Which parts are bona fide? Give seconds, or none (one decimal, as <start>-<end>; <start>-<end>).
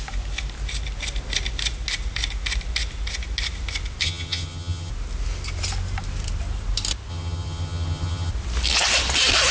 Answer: 0.0-4.0; 4.9-7.1; 8.3-9.5